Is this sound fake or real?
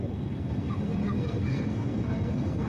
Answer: fake